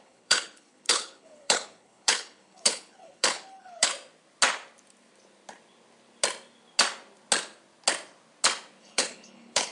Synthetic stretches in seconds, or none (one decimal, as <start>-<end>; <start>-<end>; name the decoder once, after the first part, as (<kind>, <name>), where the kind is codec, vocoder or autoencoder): 0.0-3.9 (codec, HILCodec); 8.8-9.7